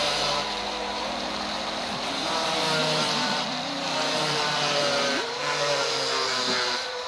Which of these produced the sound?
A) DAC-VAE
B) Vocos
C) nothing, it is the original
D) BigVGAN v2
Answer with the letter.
D